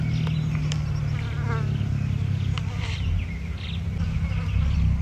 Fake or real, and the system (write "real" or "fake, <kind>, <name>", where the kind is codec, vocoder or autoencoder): real